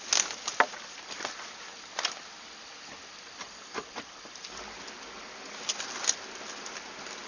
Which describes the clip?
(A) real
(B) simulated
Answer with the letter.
A